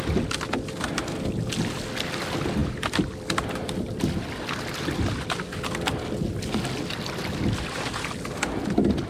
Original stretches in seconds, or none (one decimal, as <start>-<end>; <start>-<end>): 0.0-2.6; 4.8-9.1